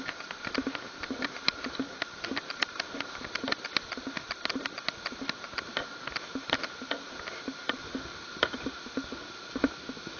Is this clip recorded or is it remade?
recorded